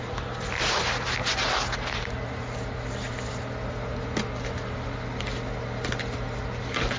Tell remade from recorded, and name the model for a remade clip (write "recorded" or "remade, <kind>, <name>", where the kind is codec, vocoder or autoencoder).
recorded